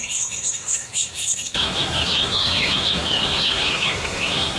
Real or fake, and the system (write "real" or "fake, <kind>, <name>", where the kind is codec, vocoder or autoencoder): fake, codec, SNAC